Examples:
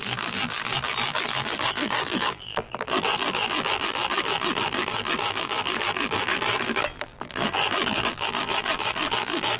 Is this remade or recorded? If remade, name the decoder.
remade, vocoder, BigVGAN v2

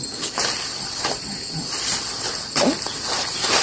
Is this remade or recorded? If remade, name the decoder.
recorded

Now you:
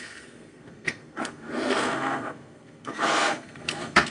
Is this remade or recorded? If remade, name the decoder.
remade, codec, SNAC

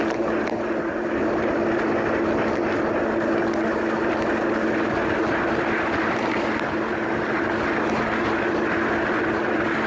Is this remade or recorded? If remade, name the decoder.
recorded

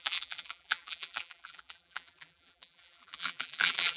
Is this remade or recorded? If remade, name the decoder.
remade, vocoder, BigVGAN v2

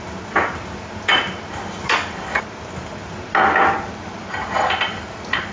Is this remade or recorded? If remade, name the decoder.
recorded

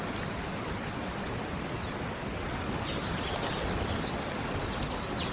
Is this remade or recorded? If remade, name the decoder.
recorded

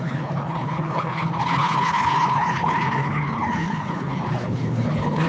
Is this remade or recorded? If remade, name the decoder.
remade, codec, HILCodec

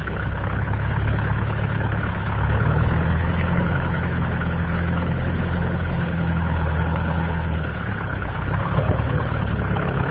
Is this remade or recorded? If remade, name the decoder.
remade, codec, HILCodec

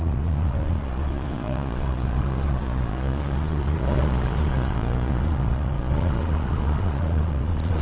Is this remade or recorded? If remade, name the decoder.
remade, vocoder, Vocos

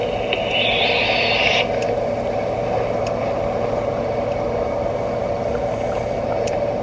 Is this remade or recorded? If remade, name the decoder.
recorded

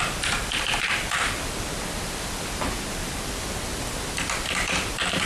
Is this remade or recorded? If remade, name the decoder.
recorded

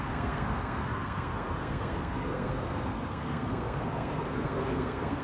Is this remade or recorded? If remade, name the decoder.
remade, codec, SNAC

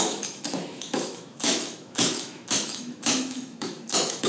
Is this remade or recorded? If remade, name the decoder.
remade, autoencoder, DAC-VAE